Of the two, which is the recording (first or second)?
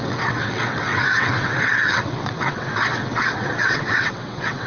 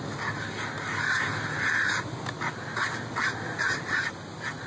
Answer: second